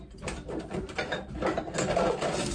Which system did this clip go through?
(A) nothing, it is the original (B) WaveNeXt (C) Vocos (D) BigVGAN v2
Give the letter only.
A